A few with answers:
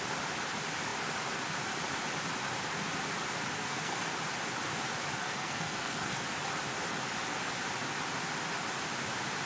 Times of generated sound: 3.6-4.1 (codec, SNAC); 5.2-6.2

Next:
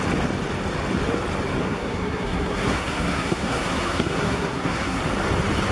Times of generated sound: 1.6-5.0 (codec, SNAC)